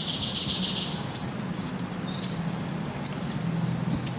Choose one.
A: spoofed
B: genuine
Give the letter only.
B